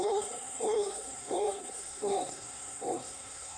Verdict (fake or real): fake